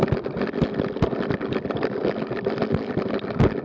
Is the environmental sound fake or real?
real